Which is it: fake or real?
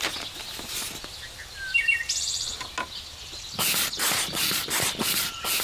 real